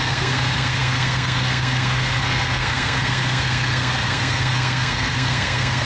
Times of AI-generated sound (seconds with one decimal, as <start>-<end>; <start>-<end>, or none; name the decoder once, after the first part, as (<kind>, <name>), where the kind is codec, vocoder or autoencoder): 0.0-5.8 (codec, SNAC)